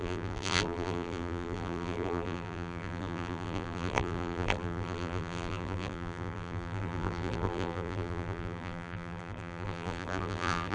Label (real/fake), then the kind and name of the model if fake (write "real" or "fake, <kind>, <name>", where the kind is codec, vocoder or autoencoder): fake, vocoder, BigVGAN v2